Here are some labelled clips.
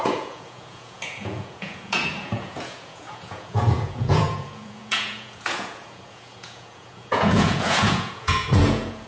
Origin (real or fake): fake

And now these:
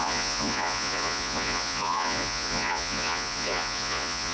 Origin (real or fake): fake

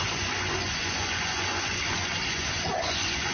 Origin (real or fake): fake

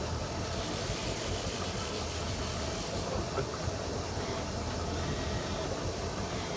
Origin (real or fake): real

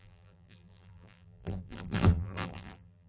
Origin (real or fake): fake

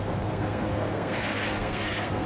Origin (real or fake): fake